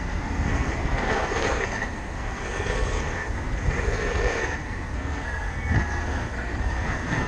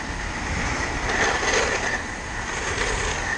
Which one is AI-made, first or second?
first